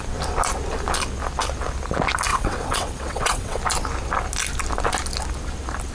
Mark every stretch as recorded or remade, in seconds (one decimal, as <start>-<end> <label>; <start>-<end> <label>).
0.0-2.3 recorded; 2.3-3.6 remade; 3.6-5.9 recorded